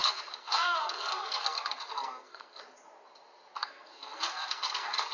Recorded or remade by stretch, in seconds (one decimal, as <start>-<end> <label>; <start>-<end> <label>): 0.0-2.6 remade; 2.6-3.6 recorded; 3.6-5.1 remade